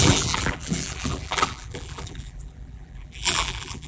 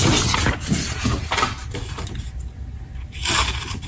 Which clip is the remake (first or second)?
first